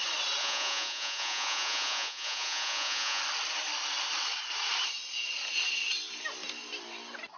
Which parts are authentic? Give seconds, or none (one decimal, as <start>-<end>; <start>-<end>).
0.0-0.4; 3.2-7.4